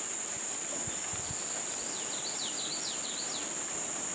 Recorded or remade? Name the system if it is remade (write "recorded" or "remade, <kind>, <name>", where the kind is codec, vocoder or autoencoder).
recorded